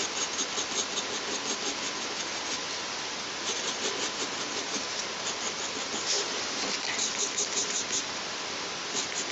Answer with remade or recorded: recorded